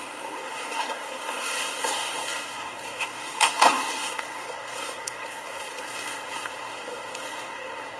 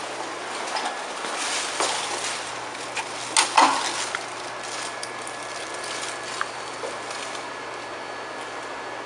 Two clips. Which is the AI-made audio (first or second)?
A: first